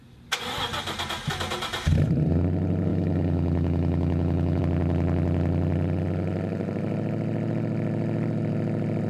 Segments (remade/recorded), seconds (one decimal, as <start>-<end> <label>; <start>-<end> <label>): 0.0-2.9 recorded; 2.9-4.6 remade; 4.6-9.1 recorded